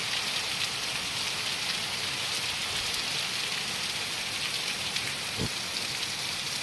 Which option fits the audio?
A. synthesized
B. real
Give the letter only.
B